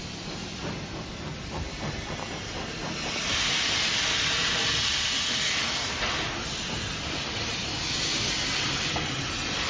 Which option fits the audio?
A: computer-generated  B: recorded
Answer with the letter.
B